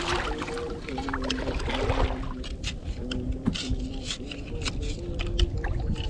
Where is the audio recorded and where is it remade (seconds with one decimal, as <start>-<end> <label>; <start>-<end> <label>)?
0.0-6.1 recorded